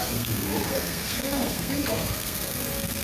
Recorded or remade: remade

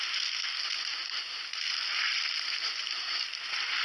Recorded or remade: recorded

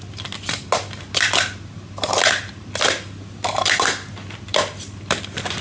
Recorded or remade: recorded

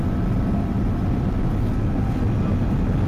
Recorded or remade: recorded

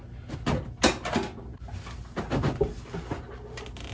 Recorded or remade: recorded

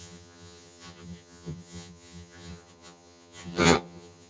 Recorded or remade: remade